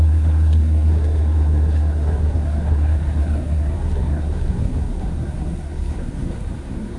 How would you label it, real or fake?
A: fake